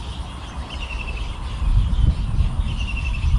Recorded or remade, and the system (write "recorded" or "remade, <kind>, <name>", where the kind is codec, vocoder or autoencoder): recorded